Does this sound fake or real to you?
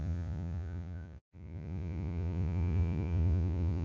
fake